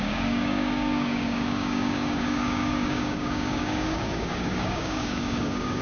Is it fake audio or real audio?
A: fake